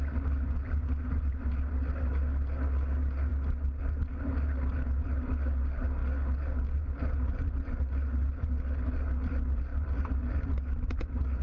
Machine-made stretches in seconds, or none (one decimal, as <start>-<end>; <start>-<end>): 9.7-10.5